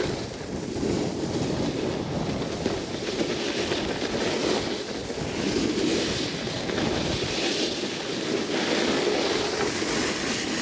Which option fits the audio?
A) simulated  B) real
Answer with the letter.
B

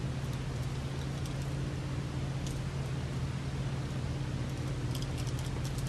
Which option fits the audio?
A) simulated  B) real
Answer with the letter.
B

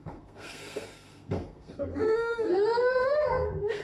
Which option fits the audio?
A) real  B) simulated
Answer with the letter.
B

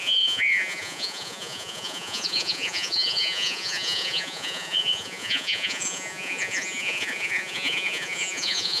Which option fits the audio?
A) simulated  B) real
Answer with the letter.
A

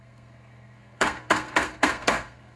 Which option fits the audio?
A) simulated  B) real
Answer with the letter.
A